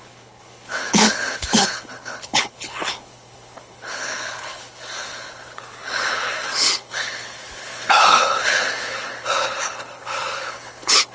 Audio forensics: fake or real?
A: fake